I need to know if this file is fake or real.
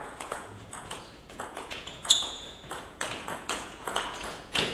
fake